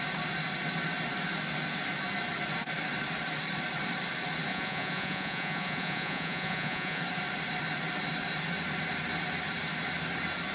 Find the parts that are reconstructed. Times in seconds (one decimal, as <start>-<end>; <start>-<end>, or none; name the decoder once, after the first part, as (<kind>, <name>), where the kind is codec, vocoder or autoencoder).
4.5-7.0 (vocoder, Vocos)